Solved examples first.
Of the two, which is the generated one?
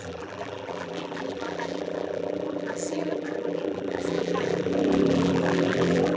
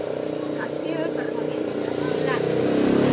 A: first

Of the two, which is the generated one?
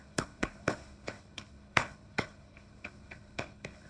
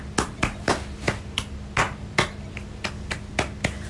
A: first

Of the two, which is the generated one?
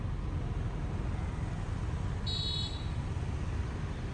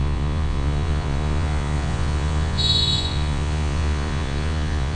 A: second